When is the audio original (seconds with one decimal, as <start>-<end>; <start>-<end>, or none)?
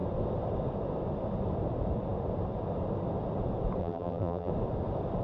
0.0-3.8; 4.5-5.2